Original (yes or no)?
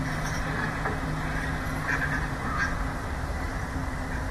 yes